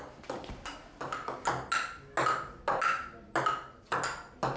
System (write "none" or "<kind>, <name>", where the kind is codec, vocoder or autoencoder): none